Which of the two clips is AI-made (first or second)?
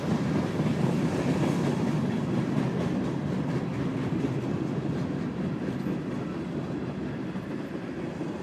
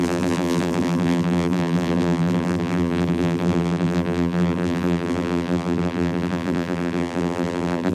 second